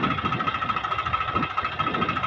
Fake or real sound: real